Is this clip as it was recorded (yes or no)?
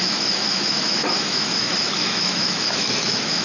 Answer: no